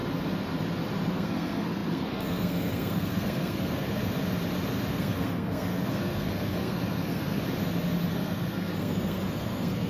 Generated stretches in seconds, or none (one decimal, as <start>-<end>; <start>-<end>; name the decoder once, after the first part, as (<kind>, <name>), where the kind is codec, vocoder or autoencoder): 1.1-4.0 (codec, SNAC); 4.9-7.4; 8.1-9.9